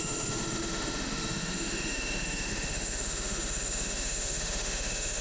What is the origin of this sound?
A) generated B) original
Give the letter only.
A